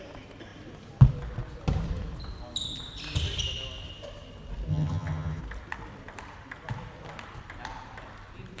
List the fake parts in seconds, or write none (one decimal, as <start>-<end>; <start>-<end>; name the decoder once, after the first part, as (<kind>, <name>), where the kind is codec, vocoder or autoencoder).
4.7-5.4 (vocoder, HiFi-GAN)